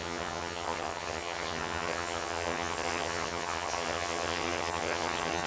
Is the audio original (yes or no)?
no